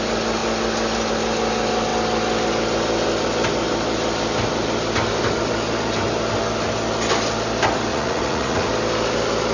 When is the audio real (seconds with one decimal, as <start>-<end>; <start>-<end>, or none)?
0.0-7.9; 8.7-9.5

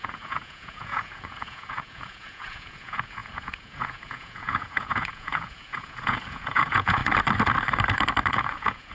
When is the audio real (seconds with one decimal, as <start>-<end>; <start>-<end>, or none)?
7.0-8.3

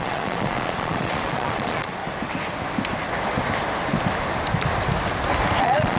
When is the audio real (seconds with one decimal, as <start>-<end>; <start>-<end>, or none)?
2.0-5.6

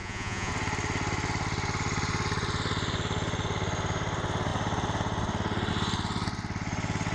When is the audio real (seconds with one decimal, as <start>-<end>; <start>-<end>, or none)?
0.5-7.1

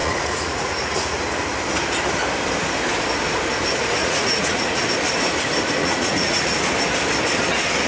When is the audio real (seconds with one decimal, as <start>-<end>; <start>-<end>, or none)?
1.2-4.0; 4.8-5.8; 6.4-7.9